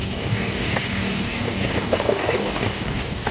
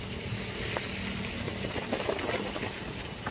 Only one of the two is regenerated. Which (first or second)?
first